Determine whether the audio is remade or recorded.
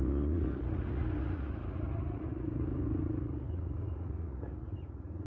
remade